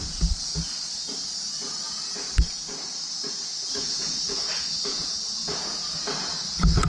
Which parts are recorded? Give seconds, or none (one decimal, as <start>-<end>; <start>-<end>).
0.5-3.7